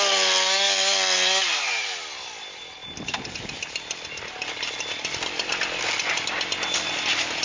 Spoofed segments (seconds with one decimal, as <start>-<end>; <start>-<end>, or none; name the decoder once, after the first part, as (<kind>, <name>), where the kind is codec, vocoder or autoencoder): none

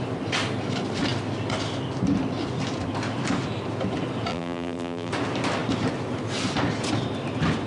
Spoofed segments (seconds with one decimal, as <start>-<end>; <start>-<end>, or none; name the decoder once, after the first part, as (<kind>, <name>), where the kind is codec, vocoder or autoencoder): 4.3-5.1 (vocoder, BigVGAN v2)